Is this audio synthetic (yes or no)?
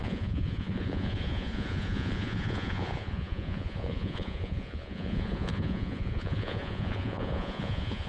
yes